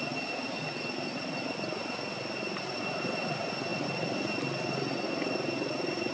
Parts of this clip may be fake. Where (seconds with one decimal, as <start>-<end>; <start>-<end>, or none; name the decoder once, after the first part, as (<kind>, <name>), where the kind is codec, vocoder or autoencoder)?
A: none